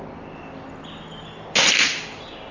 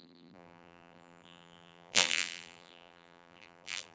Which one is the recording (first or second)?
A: first